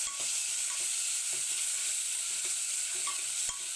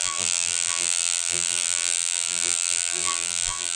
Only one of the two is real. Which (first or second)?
first